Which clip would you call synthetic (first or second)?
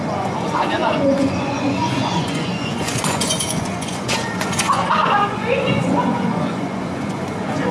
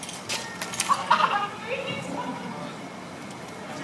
first